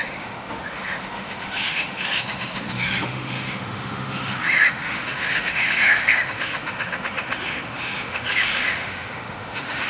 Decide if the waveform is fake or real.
fake